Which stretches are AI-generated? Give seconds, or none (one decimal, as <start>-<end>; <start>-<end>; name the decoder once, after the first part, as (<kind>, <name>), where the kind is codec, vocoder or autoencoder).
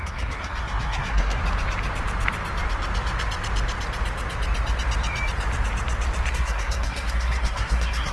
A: 0.0-1.4 (codec, SNAC); 6.3-8.1